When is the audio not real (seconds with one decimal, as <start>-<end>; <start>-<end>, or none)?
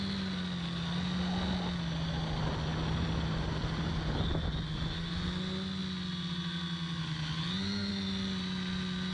none